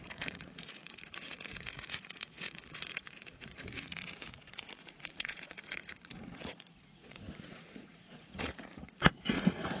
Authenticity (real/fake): fake